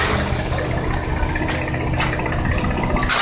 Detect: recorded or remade recorded